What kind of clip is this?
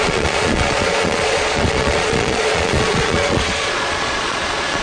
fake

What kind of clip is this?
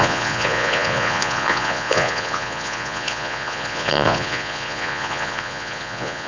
fake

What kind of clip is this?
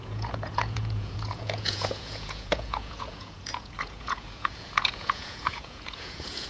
fake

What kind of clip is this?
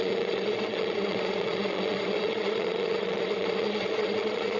fake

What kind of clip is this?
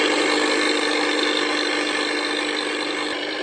real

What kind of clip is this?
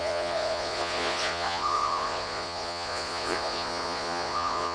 fake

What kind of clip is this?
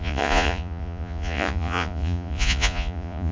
fake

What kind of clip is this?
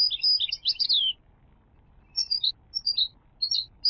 real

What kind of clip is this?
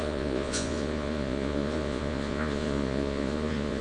fake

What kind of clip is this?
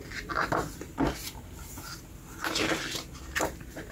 real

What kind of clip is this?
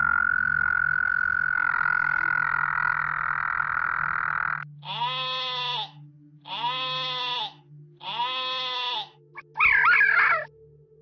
real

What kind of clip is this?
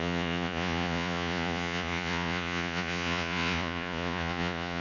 fake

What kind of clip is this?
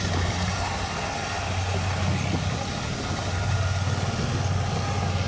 real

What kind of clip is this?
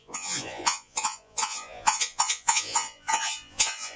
fake